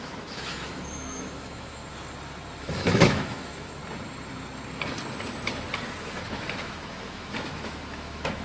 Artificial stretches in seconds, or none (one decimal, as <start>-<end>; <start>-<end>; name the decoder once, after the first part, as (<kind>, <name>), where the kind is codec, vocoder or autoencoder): 0.0-1.8 (autoencoder, DAC-VAE); 2.6-3.8; 6.1-8.4